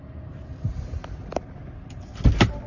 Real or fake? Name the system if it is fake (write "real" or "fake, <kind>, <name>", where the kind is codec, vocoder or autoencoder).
real